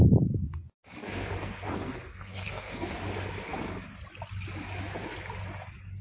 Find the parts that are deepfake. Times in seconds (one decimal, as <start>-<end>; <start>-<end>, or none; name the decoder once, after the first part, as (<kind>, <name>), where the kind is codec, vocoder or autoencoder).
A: 1.0-2.9 (codec, SNAC)